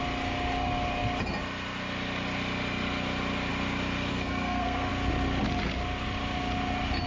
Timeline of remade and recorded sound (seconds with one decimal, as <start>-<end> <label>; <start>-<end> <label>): 0.0-4.1 recorded; 4.1-4.9 remade; 4.9-7.1 recorded